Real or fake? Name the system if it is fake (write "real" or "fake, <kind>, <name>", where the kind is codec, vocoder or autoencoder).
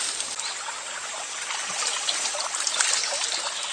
real